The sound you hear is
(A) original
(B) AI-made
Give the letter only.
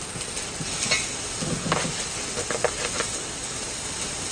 A